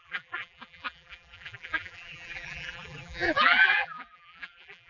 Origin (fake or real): fake